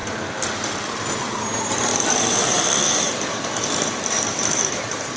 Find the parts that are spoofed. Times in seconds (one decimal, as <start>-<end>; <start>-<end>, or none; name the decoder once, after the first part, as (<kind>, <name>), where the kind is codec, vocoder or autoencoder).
1.9-5.2 (vocoder, BigVGAN v2)